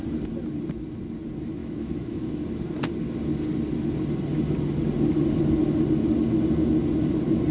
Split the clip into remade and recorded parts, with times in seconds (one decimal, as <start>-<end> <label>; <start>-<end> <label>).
0.0-1.6 recorded; 1.6-2.3 remade; 2.3-7.5 recorded